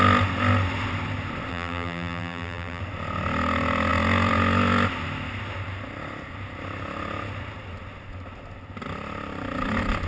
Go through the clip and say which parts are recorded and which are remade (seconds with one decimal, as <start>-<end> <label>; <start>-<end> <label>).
0.0-1.5 recorded; 1.5-2.8 remade; 2.8-10.1 recorded